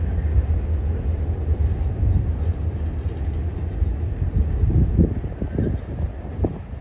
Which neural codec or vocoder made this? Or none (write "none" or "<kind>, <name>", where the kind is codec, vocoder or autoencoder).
none